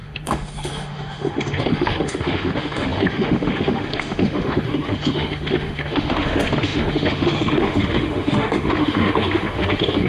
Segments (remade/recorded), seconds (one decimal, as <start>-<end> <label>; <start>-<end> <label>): 0.0-10.1 remade